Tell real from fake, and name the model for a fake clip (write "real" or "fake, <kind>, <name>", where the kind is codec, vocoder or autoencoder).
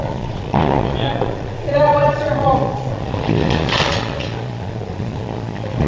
fake, vocoder, Vocos